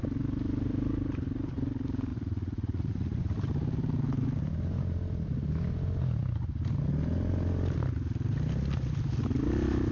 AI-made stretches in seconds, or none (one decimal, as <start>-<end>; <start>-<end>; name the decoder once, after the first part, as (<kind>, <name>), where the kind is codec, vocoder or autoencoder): 2.1-3.2 (vocoder, Vocos)